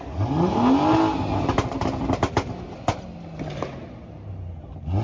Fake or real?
real